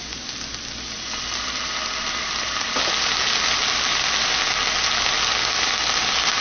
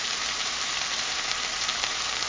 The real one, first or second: first